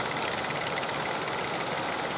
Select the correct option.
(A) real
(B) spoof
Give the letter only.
A